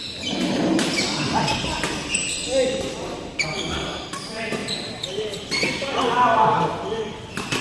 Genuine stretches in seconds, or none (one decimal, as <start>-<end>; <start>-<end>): 0.0-7.6